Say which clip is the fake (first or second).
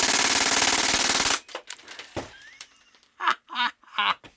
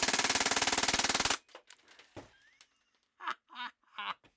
first